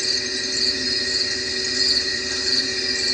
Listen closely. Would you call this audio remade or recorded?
recorded